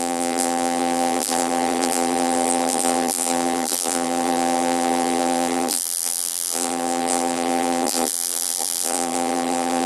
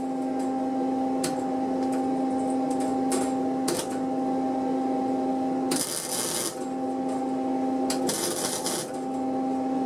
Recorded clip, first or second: second